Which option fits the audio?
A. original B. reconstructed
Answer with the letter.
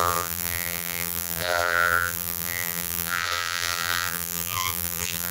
B